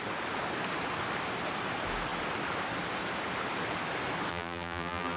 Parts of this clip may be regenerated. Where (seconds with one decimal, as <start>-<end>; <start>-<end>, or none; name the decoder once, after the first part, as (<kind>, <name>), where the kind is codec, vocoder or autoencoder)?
4.3-5.2 (vocoder, BigVGAN v2)